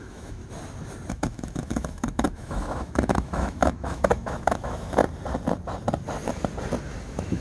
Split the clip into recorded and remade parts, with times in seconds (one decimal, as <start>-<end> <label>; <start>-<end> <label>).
0.0-0.4 remade; 0.4-1.1 recorded; 1.1-5.0 remade; 5.0-7.0 recorded; 7.0-7.4 remade